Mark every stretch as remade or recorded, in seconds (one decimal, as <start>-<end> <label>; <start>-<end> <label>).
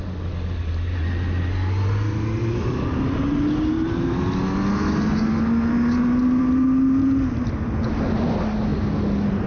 0.0-9.5 recorded